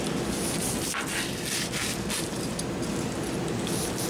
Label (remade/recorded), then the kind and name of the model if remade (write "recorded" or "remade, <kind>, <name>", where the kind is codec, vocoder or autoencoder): recorded